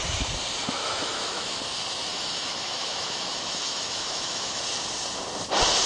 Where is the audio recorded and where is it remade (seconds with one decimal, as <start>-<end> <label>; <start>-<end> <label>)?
0.0-0.8 recorded; 0.8-1.6 remade; 1.6-2.1 recorded; 2.1-4.6 remade; 4.6-5.9 recorded